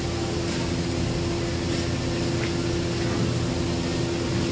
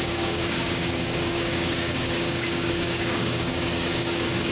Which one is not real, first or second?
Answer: second